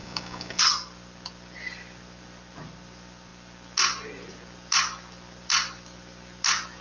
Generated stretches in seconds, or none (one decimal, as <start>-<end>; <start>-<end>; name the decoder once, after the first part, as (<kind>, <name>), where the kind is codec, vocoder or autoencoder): 0.0-0.6 (codec, DAC)